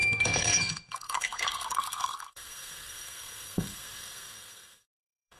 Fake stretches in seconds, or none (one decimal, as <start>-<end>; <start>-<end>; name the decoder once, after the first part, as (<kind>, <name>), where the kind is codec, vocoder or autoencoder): 0.0-5.4 (codec, SNAC)